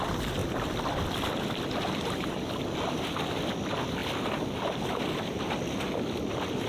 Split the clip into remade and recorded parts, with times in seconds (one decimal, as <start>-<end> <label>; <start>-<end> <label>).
0.0-4.0 remade; 4.0-4.9 recorded; 4.9-6.7 remade

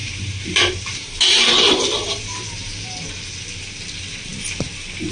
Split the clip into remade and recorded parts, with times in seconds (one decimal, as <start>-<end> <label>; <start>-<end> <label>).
0.0-3.1 remade; 3.1-5.1 recorded

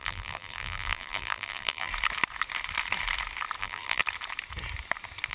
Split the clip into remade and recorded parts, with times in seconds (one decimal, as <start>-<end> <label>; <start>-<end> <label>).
0.0-1.9 remade; 1.9-3.6 recorded; 3.6-4.0 remade; 4.0-5.3 recorded

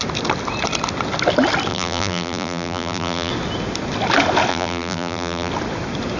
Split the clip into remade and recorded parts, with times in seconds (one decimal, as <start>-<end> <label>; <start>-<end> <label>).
0.0-1.7 recorded; 1.7-3.3 remade; 3.3-4.5 recorded; 4.5-5.5 remade; 5.5-6.2 recorded

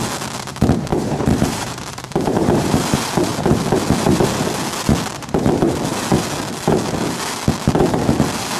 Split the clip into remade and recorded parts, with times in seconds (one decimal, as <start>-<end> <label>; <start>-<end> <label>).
0.0-0.9 recorded; 0.9-2.7 remade; 2.7-8.6 recorded